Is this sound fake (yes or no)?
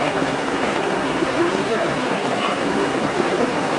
yes